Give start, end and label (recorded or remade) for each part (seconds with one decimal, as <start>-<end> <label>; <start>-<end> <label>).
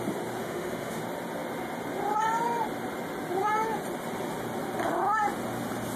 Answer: 0.0-0.4 recorded; 0.4-1.0 remade; 1.0-6.0 recorded